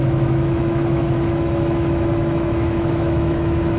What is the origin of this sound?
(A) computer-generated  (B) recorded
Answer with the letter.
A